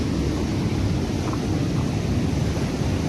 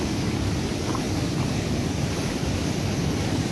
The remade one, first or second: second